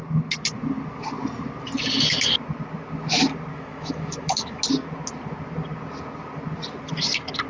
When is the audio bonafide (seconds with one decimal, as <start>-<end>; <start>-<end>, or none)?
0.0-3.5; 4.6-7.5